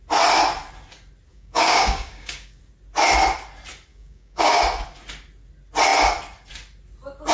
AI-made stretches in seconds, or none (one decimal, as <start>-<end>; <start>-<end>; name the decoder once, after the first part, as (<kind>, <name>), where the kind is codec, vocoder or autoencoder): 1.3-2.6 (codec, DAC); 3.9-4.6